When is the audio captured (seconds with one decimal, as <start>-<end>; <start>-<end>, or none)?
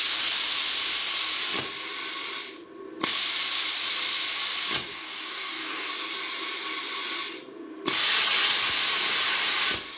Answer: 0.0-4.9; 5.9-10.0